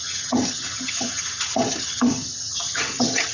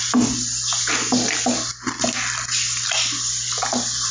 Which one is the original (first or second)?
second